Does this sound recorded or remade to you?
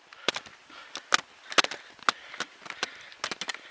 recorded